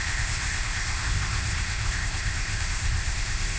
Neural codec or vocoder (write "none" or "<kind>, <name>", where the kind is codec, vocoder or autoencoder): codec, ZipCodec